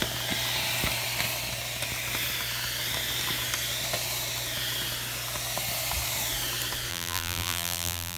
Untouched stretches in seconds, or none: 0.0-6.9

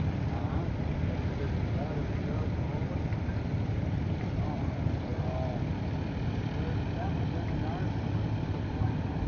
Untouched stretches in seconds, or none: 5.1-7.8

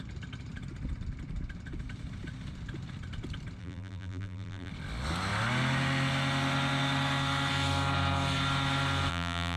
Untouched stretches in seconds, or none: 0.0-3.6; 4.7-9.1